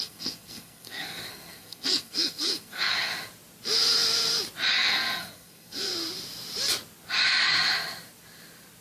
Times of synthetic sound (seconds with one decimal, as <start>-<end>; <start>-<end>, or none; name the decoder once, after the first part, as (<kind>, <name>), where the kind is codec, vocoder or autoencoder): 0.0-3.1 (codec, SNAC); 4.7-5.9

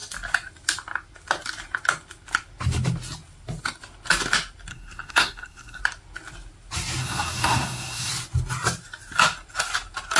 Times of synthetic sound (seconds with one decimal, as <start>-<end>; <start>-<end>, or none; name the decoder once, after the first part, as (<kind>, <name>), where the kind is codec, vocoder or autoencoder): 4.7-5.8 (codec, SNAC); 7.0-8.1

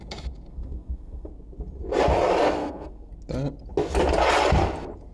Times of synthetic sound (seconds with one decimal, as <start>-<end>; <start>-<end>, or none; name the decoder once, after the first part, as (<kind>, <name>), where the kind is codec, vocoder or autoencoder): 0.5-1.3 (codec, SNAC); 2.6-3.1

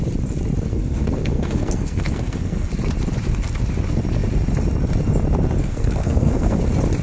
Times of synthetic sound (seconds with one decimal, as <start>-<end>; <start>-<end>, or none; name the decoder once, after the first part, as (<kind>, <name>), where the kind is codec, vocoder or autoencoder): 0.7-2.7 (codec, SNAC); 5.6-6.6

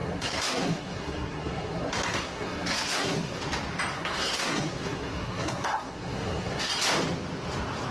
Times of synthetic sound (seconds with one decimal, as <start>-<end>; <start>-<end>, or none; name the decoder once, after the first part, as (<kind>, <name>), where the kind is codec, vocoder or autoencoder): 0.0-3.4 (codec, SNAC); 3.9-6.7

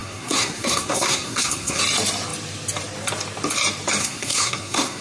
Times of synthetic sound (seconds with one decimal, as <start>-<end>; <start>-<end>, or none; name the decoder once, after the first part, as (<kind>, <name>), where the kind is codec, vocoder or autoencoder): 0.0-1.8 (codec, SNAC); 4.0-5.0

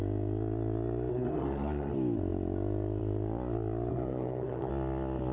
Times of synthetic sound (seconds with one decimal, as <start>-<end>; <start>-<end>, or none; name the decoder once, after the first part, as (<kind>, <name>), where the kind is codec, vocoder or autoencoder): 1.1-1.9 (codec, SNAC); 3.9-4.7